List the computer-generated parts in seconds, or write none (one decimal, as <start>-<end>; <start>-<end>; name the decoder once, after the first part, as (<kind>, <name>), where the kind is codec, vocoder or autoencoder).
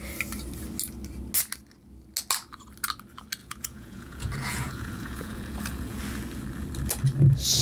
3.4-6.0 (vocoder, Vocos)